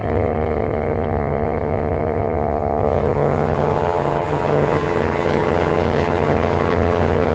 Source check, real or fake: fake